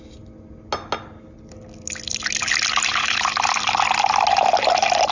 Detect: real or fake real